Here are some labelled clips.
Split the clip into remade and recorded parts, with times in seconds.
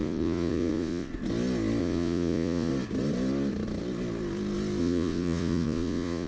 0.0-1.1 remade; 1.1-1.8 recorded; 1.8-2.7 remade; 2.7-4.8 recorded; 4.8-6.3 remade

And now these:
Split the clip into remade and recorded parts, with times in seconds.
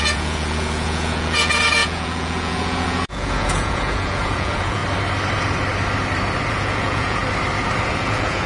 0.0-4.8 remade; 4.8-6.5 recorded; 6.5-7.2 remade; 7.2-7.9 recorded; 7.9-8.5 remade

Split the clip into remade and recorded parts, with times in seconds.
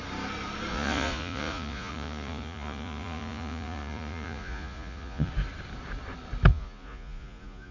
0.0-0.7 recorded; 0.7-5.3 remade; 5.3-6.5 recorded; 6.5-7.7 remade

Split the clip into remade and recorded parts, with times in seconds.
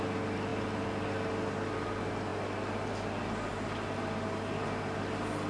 0.0-5.5 recorded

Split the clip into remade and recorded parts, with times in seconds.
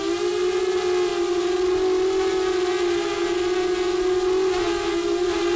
0.0-5.6 recorded